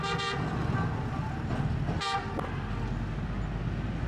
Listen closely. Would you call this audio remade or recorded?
recorded